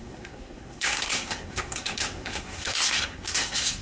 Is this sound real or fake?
fake